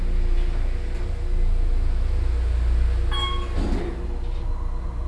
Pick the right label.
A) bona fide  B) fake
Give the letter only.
A